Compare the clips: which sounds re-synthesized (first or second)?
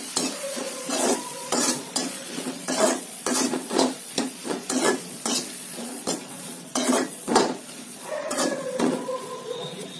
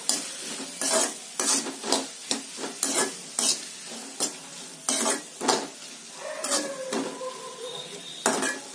first